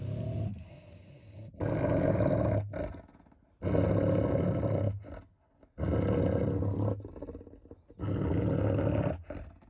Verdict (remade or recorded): recorded